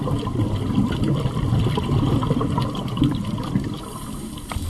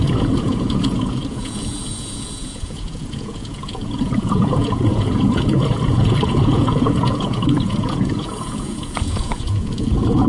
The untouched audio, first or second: first